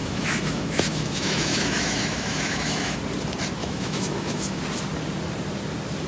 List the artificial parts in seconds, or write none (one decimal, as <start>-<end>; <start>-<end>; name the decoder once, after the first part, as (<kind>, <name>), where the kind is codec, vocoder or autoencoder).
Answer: 0.0-3.0 (autoencoder, DAC-VAE); 3.6-4.6